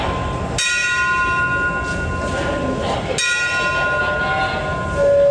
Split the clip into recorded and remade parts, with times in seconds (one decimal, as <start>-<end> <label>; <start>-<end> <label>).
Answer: 0.0-5.3 recorded